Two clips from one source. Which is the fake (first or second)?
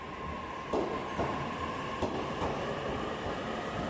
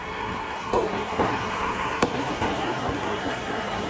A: second